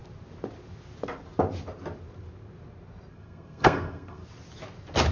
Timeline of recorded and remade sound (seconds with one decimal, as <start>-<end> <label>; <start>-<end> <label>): 0.0-3.1 recorded; 3.1-4.2 remade; 4.2-5.1 recorded

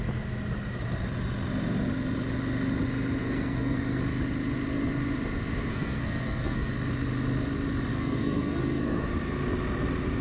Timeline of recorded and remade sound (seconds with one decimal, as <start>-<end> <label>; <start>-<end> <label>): 0.0-3.2 recorded; 3.2-4.0 remade; 4.0-5.7 recorded; 5.7-6.7 remade; 6.7-7.9 recorded; 7.9-9.1 remade; 9.1-10.2 recorded